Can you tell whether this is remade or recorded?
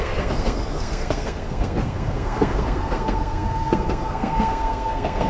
remade